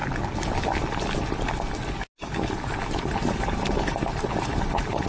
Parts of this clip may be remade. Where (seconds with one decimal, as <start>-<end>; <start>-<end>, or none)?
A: 2.9-5.1